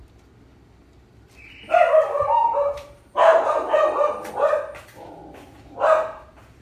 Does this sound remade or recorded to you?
recorded